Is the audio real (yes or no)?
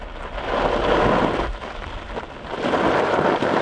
yes